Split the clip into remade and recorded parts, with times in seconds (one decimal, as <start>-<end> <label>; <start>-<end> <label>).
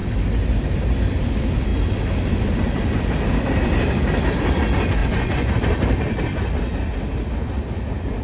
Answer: 0.0-5.0 recorded; 5.0-5.5 remade; 5.5-8.2 recorded